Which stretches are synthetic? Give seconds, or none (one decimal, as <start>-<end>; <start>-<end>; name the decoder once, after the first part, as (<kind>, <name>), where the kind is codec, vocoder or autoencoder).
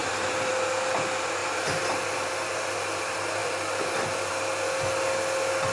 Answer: 0.0-0.5 (vocoder, BigVGAN v2); 1.4-2.3